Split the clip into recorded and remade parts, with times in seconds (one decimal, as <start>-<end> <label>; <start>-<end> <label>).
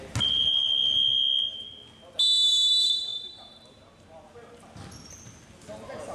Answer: 0.0-6.1 recorded